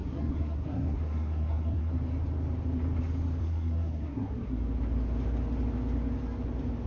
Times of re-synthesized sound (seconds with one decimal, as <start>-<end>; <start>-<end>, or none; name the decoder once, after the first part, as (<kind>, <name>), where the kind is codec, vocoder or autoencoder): 0.0-1.9 (codec, SNAC); 3.4-4.6